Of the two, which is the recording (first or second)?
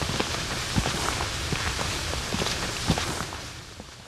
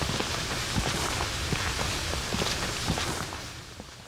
second